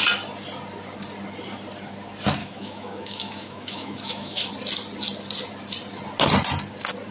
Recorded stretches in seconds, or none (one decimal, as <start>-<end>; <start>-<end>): 0.0-2.4; 4.5-7.1